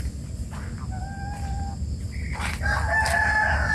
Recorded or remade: recorded